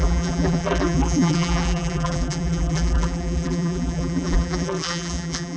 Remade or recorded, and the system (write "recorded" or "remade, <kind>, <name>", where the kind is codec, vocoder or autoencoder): remade, vocoder, BigVGAN v2